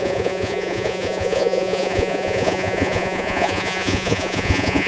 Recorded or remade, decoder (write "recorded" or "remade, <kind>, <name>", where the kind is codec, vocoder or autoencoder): remade, vocoder, Vocos